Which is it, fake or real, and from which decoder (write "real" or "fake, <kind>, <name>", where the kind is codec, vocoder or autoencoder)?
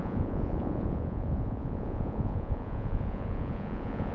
fake, vocoder, Vocos